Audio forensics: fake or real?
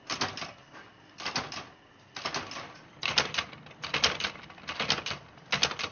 real